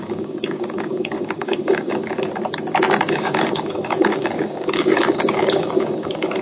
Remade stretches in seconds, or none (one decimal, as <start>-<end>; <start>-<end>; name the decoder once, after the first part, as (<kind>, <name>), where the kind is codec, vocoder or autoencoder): 0.0-2.0 (codec, DAC); 3.1-6.4